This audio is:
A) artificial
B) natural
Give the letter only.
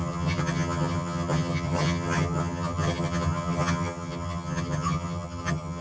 A